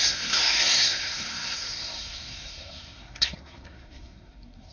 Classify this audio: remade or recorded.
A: remade